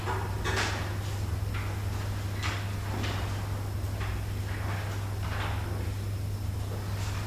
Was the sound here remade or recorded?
recorded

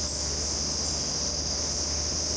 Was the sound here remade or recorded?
recorded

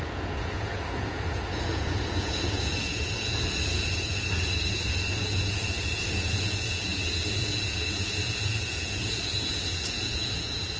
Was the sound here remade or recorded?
remade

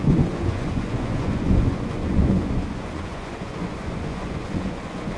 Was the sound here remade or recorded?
remade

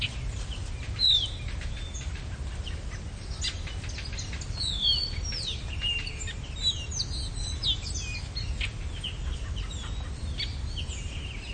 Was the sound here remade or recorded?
recorded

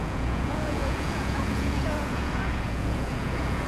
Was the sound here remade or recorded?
remade